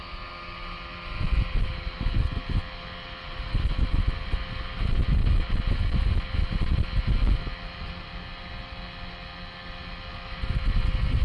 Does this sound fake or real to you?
real